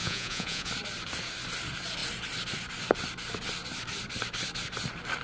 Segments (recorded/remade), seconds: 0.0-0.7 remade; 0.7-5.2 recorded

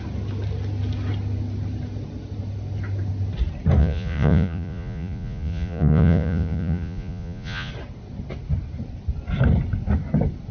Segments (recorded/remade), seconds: 0.0-3.8 recorded; 3.8-7.7 remade; 7.7-10.5 recorded